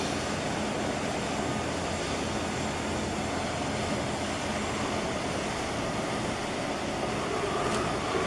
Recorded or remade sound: recorded